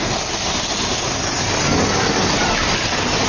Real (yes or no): yes